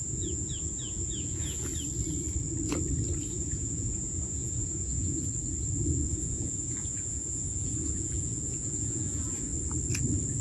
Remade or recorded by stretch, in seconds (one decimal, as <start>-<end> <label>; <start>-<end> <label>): 0.0-1.7 remade; 1.7-3.2 recorded; 3.2-5.3 remade; 5.3-6.1 recorded; 6.1-9.5 remade; 9.5-10.4 recorded